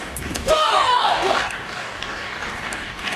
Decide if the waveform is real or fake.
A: fake